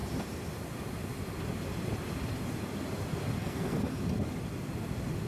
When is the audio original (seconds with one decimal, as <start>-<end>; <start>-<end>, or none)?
0.0-3.4; 4.0-5.3